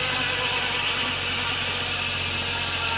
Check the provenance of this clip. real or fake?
real